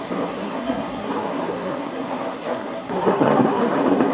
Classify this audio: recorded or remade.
remade